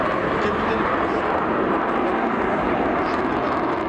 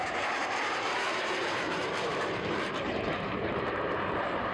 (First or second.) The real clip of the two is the first